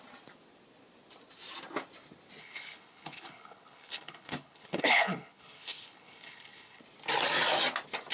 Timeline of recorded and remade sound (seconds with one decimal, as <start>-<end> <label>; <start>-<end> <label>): 0.0-2.4 recorded; 2.4-6.8 remade; 6.8-8.1 recorded